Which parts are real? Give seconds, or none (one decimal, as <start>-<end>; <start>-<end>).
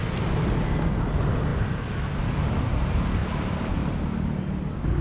0.0-5.0